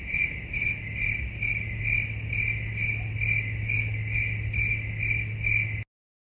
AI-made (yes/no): no